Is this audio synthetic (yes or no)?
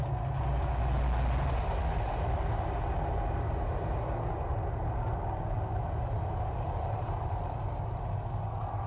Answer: no